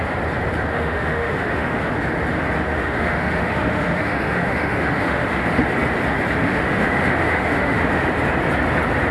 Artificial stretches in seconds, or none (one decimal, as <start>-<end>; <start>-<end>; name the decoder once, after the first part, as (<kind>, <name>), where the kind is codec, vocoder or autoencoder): 0.7-1.9 (autoencoder, DAC-VAE); 2.7-5.6; 6.4-8.2